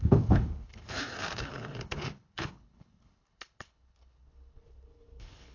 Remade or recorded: remade